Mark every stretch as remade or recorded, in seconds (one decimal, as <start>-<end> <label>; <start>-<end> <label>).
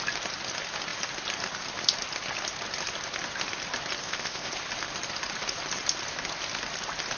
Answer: 0.0-4.0 recorded; 4.0-4.5 remade; 4.5-7.2 recorded